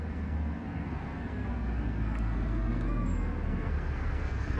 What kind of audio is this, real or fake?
fake